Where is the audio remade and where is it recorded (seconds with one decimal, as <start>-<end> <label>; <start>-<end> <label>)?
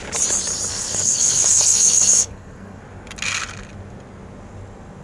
0.0-0.7 recorded; 0.7-2.8 remade; 2.8-5.0 recorded